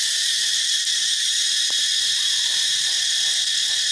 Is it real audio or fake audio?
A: fake